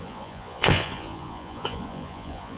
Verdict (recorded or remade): remade